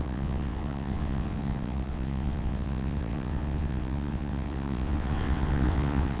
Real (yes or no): no